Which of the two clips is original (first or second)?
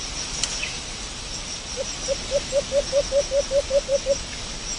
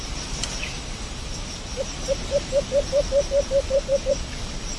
first